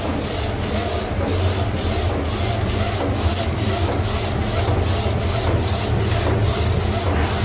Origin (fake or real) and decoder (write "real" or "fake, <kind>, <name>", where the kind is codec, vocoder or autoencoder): real